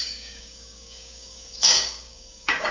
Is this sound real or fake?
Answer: fake